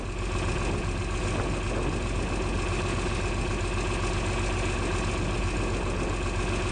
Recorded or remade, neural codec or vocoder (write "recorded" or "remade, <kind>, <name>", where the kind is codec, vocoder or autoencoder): recorded